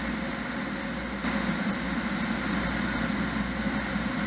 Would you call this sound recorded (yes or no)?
yes